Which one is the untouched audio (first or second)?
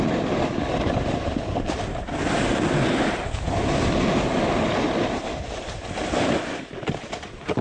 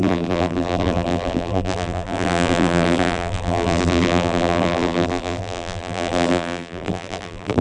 first